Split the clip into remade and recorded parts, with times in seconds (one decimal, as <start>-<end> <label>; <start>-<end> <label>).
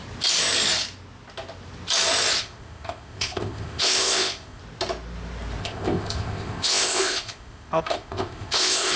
0.0-2.4 recorded; 2.4-4.6 remade; 4.6-5.6 recorded; 5.6-9.0 remade